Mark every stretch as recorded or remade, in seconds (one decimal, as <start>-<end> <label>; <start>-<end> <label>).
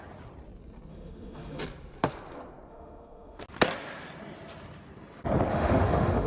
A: 0.0-0.9 recorded; 0.9-1.6 remade; 1.6-2.7 recorded; 2.7-3.4 remade; 3.4-5.5 recorded; 5.5-6.3 remade